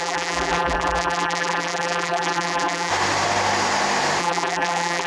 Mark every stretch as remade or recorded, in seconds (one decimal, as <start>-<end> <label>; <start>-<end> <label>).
0.0-2.9 remade; 2.9-4.2 recorded; 4.2-5.1 remade